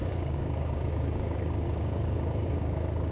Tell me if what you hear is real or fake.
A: fake